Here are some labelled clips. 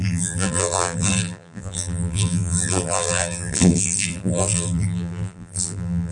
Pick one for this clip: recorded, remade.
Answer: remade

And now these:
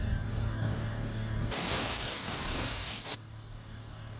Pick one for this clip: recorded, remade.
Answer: remade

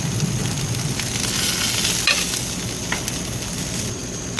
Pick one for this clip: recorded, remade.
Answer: recorded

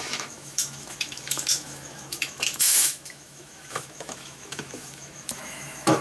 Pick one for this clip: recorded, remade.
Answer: remade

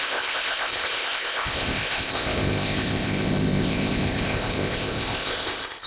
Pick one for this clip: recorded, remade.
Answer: remade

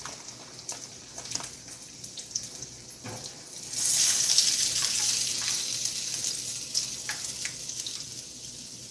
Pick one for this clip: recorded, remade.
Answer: recorded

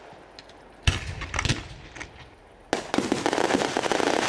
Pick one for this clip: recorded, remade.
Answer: recorded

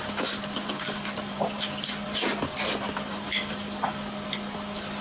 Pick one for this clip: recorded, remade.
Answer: recorded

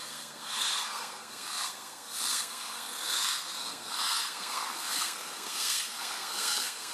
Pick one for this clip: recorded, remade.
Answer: remade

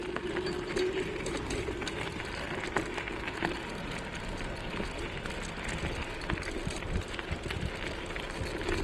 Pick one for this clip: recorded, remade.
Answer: recorded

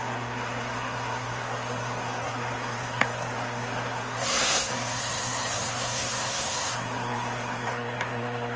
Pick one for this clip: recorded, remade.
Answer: remade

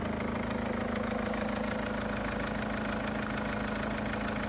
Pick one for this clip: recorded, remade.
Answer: recorded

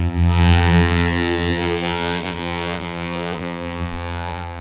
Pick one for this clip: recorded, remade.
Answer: remade